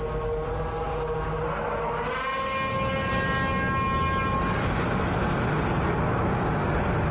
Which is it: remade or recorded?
recorded